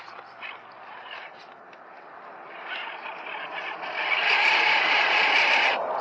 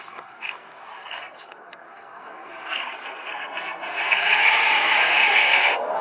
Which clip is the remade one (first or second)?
second